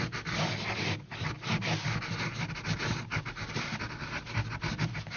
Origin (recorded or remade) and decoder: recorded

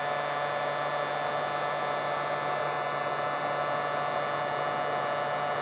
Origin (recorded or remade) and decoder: recorded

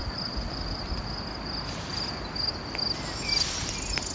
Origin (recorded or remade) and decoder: recorded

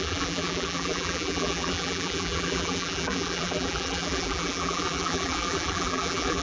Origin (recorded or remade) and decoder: remade, vocoder, BigVGAN v2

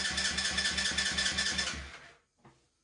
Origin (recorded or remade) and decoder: recorded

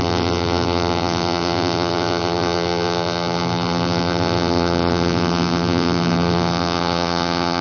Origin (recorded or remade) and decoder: remade, vocoder, BigVGAN v2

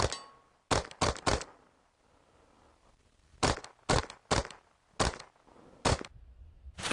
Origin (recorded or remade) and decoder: recorded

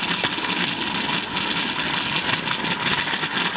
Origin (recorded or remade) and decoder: recorded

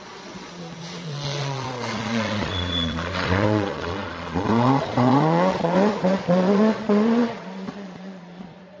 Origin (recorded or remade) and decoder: remade, vocoder, Vocos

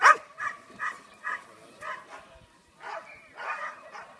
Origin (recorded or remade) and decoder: recorded